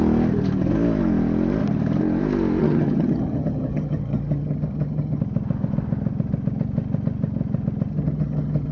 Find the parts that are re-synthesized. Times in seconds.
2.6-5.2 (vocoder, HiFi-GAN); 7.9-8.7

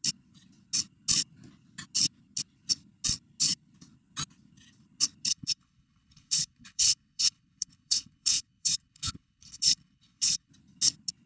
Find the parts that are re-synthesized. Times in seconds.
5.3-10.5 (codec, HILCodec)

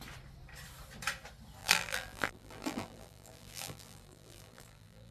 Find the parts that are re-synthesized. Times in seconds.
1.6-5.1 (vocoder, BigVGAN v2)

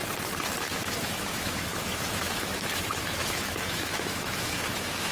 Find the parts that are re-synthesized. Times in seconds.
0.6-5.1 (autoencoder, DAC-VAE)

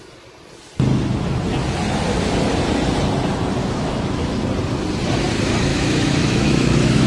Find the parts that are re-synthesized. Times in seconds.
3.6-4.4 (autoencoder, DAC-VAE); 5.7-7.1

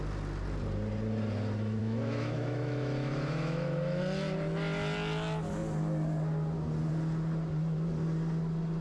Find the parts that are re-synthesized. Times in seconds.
1.8-4.0 (autoencoder, DAC-VAE)